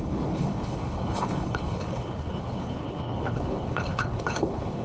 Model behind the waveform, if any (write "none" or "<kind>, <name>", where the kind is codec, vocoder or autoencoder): codec, HILCodec